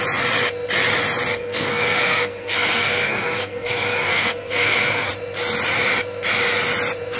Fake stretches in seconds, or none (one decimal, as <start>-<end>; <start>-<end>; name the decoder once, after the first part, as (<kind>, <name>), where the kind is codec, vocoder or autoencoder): 1.3-5.1 (codec, SNAC)